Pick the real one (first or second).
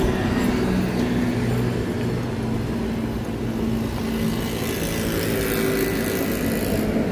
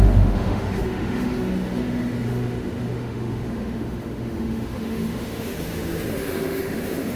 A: first